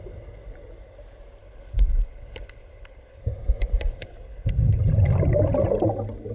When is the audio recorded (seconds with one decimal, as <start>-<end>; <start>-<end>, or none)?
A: 0.0-1.4; 3.2-3.9; 4.8-6.3